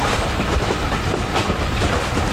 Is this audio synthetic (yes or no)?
no